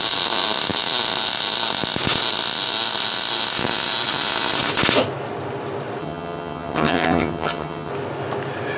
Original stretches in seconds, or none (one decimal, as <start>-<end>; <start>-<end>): 0.0-6.0; 7.9-8.8

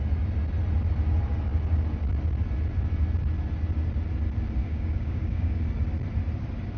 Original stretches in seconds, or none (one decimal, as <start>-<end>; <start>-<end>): 0.0-4.6; 5.6-6.8

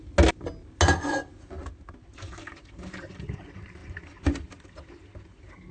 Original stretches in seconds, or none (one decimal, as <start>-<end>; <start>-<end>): 0.0-5.7

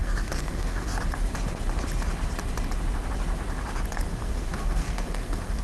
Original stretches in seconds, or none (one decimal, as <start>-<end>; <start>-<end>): 0.9-4.1

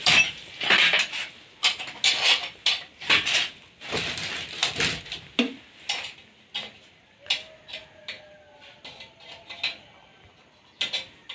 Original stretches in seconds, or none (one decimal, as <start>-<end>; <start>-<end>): 0.0-11.3

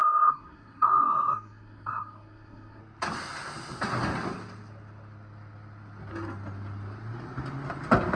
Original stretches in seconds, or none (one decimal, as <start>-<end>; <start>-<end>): 2.8-8.2

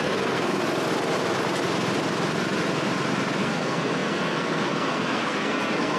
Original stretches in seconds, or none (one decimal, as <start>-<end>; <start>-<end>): 0.6-3.4